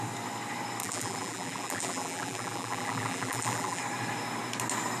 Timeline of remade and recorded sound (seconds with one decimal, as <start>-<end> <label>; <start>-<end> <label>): 0.0-0.8 recorded; 0.8-3.8 remade; 3.8-5.0 recorded